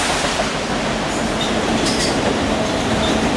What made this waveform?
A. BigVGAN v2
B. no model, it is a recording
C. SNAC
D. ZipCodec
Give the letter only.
B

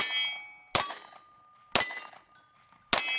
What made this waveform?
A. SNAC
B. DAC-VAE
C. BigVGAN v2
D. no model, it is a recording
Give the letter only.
D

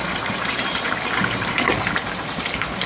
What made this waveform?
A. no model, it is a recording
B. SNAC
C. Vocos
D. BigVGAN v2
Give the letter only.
D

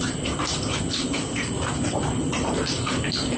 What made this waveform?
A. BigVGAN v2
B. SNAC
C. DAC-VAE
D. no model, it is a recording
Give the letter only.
A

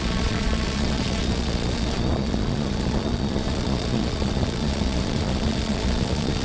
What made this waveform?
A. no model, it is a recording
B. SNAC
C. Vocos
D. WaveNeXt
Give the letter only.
C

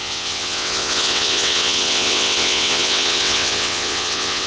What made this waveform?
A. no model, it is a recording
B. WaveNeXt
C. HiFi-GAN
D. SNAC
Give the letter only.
B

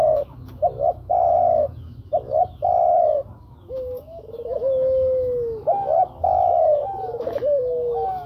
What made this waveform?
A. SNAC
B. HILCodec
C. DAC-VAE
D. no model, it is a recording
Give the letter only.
C